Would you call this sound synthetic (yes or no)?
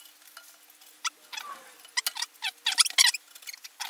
no